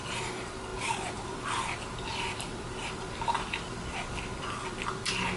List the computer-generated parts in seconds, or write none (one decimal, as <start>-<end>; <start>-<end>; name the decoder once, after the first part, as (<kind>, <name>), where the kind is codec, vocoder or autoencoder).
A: 0.7-3.9 (vocoder, BigVGAN v2)